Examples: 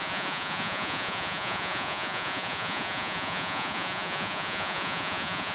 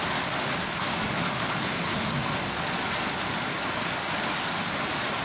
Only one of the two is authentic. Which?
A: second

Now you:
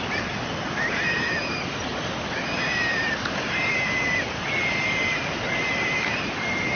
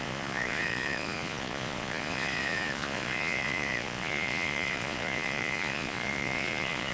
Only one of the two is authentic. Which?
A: first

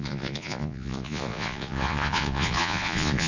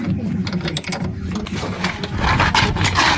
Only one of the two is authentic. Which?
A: second